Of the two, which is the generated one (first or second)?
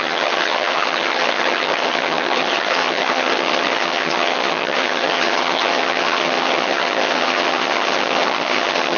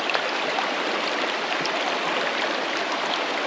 first